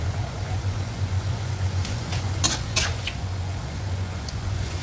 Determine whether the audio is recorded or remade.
remade